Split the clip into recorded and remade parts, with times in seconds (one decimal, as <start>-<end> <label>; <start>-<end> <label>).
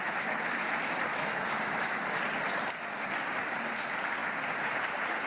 0.0-1.1 recorded; 1.1-2.2 remade; 2.2-5.3 recorded